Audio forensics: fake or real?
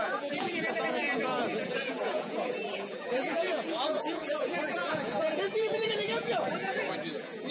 fake